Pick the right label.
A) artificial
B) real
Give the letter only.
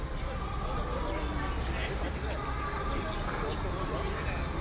B